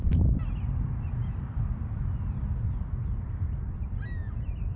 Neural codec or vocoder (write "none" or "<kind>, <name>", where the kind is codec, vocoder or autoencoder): none